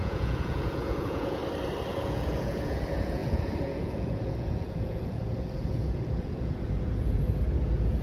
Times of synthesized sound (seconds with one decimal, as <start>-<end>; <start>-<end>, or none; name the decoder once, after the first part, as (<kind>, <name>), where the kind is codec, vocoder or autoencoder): 0.0-1.4 (vocoder, Vocos); 1.9-8.0